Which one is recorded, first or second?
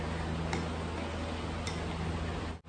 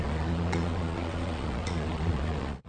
first